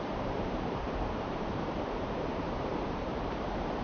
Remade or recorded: remade